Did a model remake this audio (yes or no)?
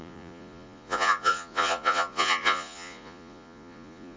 yes